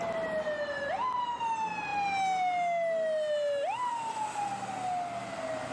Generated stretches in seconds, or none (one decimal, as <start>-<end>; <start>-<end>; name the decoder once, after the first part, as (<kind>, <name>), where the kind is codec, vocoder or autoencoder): none